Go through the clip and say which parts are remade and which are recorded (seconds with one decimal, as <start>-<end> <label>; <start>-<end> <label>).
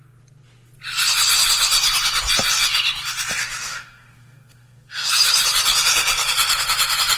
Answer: 0.0-3.4 recorded; 3.4-5.1 remade; 5.1-7.2 recorded